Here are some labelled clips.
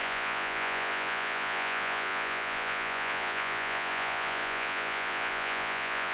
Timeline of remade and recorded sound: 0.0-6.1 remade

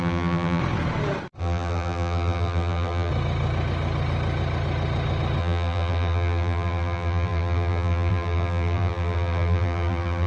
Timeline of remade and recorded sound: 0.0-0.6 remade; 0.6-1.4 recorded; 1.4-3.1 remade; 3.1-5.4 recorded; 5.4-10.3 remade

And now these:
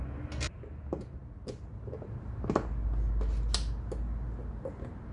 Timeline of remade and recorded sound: 0.0-5.1 recorded

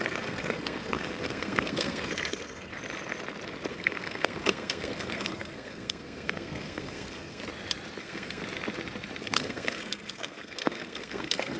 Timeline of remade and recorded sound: 0.0-2.7 remade; 2.7-3.7 recorded; 3.7-7.4 remade; 7.4-8.0 recorded; 8.0-8.4 remade; 8.4-9.2 recorded; 9.2-11.6 remade

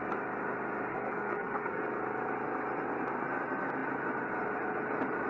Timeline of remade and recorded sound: 0.0-0.9 recorded; 0.9-1.8 remade; 1.8-5.3 recorded